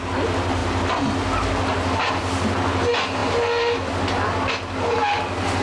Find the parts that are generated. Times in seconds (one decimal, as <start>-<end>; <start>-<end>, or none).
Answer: none